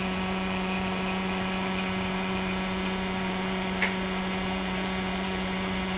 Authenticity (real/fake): fake